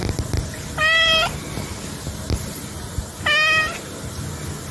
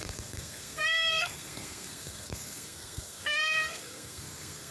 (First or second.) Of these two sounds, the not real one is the second